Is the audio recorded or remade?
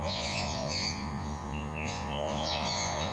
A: remade